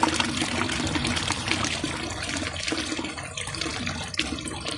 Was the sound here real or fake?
real